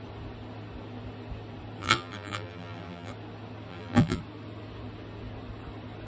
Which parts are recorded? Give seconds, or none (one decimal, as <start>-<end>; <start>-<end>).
0.0-1.8; 3.1-3.7; 4.2-6.1

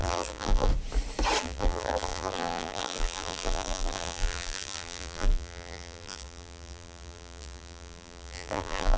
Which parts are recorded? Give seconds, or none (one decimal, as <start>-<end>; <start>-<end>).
0.7-1.4

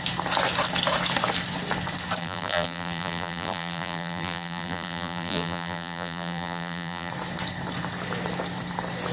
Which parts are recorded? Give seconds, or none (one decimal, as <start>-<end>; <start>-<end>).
0.0-2.2; 7.1-9.1

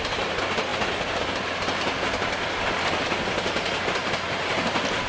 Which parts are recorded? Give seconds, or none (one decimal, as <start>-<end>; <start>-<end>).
0.0-5.1

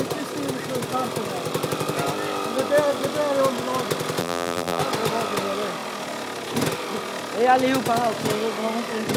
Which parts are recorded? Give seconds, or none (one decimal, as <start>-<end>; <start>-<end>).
0.0-4.2; 4.8-9.2